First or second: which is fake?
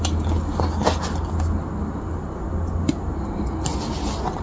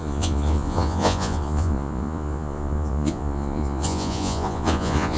second